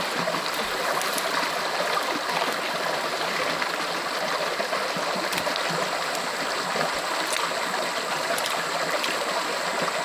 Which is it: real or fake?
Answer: real